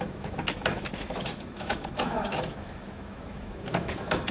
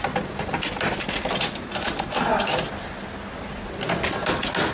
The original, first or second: second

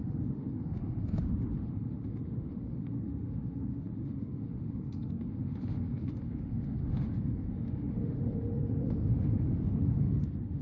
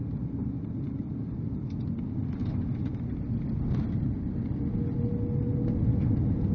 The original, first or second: second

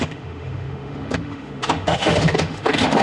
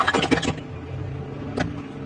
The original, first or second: second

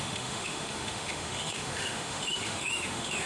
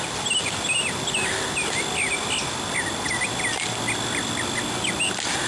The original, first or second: second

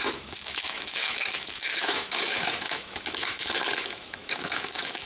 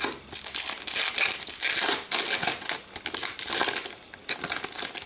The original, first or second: second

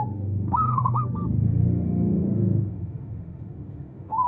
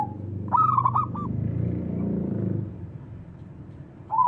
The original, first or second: second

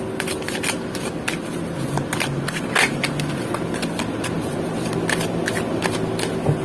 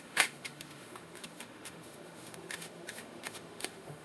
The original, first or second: first